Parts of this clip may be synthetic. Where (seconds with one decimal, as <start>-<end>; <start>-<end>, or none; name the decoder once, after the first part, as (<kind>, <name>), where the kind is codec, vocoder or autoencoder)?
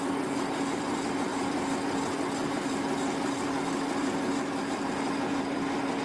1.3-1.9 (vocoder, BigVGAN v2); 2.4-4.9